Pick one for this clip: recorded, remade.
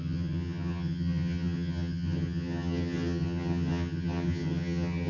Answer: remade